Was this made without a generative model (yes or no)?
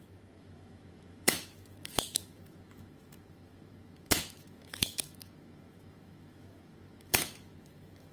no